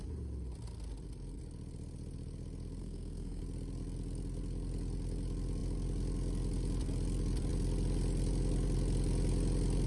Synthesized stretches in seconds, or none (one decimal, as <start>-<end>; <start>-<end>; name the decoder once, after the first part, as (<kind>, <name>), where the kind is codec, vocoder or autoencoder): 2.8-3.4 (codec, SNAC)